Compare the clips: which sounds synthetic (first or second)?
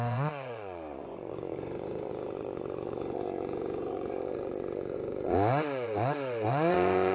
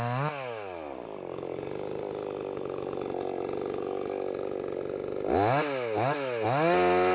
first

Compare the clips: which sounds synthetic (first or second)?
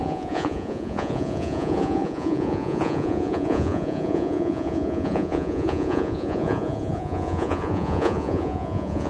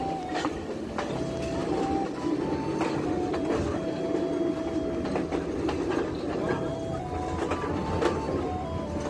first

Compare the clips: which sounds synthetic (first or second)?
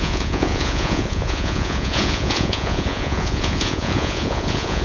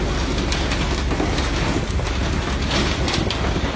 first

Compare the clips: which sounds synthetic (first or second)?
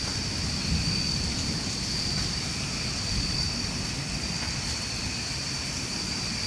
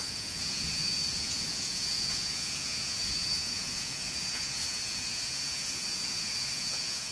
second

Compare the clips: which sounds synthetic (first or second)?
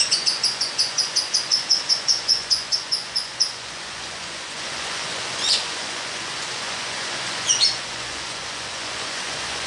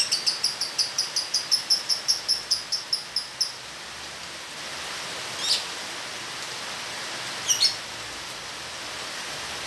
first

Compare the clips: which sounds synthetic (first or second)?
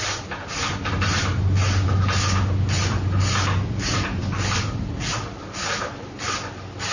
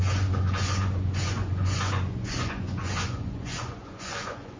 second